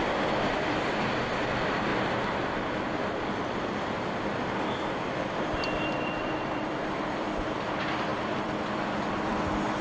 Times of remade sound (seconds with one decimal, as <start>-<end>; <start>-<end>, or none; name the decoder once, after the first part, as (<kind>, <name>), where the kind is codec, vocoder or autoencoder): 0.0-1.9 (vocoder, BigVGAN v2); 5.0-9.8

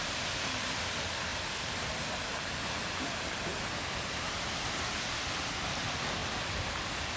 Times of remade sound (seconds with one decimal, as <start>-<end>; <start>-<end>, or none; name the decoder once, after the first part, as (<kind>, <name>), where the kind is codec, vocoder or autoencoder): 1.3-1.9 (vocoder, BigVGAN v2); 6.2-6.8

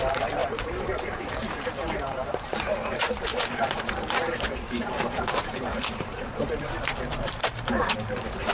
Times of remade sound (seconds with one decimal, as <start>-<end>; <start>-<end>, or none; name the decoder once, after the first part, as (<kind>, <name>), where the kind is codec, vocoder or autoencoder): 0.0-8.5 (vocoder, BigVGAN v2)

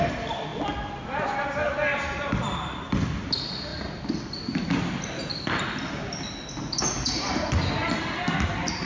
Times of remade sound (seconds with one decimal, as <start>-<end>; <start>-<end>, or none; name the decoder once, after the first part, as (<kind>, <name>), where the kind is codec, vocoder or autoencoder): none